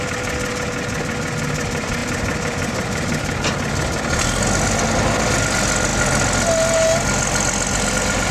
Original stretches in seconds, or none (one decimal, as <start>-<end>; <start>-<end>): 0.0-8.3